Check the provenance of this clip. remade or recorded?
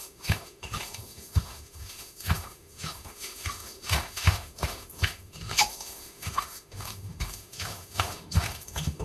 remade